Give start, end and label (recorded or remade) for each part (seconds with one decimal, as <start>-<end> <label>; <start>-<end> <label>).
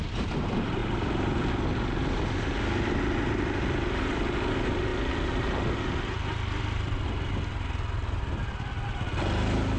0.0-9.8 recorded